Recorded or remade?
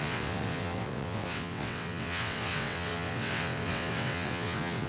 remade